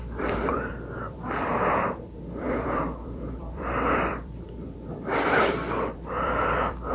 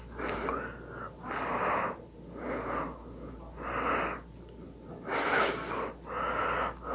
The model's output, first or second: first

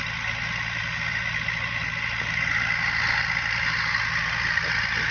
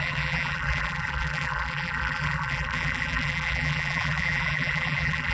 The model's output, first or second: second